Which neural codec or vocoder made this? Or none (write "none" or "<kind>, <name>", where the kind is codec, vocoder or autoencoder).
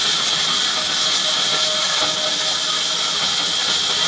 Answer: none